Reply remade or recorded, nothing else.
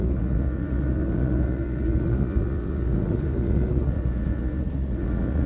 remade